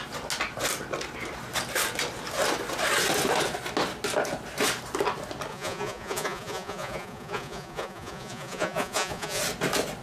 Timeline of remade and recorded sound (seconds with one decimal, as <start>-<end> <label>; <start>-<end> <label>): 0.0-5.5 recorded; 5.5-9.4 remade; 9.4-10.0 recorded